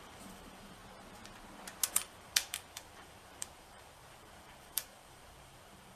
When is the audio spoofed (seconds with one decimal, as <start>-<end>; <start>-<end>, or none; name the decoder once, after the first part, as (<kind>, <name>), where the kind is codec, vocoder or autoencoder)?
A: 0.0-0.8 (vocoder, BigVGAN v2); 1.9-6.0